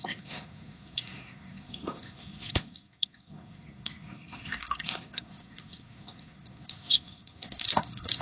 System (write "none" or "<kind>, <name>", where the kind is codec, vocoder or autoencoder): codec, SNAC